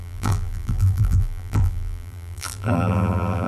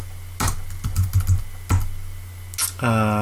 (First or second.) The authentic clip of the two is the second